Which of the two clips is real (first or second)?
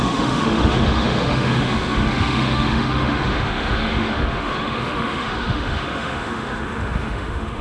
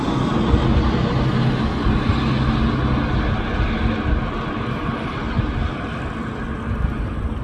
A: second